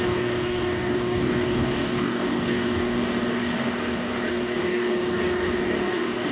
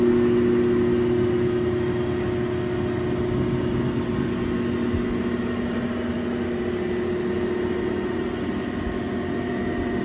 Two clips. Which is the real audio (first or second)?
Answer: second